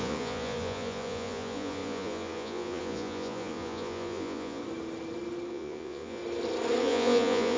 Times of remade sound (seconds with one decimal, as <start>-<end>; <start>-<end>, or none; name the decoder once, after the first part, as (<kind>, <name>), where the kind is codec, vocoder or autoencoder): 0.0-4.6 (vocoder, Vocos); 5.5-6.2; 6.8-7.6